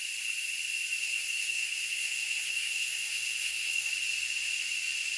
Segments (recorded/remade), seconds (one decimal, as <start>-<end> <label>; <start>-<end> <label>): 0.0-1.0 recorded; 1.0-3.9 remade; 3.9-5.2 recorded